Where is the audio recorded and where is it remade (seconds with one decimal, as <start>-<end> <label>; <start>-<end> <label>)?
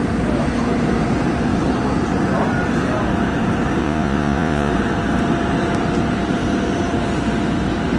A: 0.0-3.8 recorded; 3.8-4.7 remade; 4.7-8.0 recorded